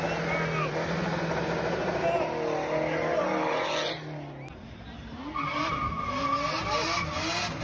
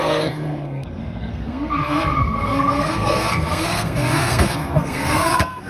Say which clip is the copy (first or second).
second